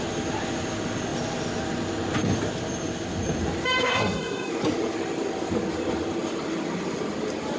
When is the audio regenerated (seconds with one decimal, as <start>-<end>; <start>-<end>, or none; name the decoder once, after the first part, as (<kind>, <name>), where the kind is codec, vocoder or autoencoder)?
3.8-4.5 (codec, SNAC)